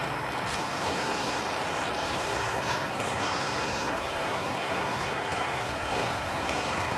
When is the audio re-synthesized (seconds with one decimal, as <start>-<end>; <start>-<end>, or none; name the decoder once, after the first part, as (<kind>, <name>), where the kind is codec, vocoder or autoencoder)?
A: 0.6-1.4 (codec, SNAC); 2.0-7.0